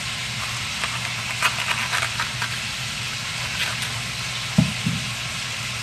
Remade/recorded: recorded